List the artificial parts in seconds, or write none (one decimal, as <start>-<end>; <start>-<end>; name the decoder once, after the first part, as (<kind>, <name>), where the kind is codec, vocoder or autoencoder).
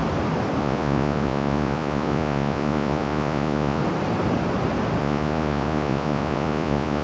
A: 0.6-3.8 (vocoder, Vocos); 5.0-7.0